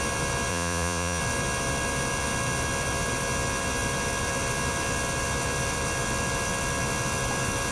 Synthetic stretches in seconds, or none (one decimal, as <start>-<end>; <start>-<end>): 0.5-1.2